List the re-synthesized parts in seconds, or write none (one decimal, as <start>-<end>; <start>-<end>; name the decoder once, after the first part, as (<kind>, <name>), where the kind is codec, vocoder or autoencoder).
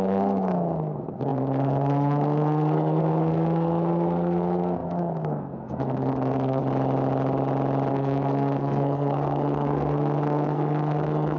0.0-6.6 (codec, SNAC); 7.9-11.4